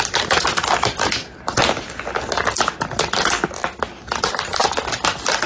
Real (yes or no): yes